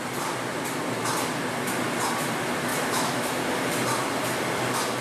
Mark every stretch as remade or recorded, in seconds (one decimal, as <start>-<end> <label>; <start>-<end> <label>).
0.0-2.7 recorded; 2.7-3.4 remade; 3.4-5.0 recorded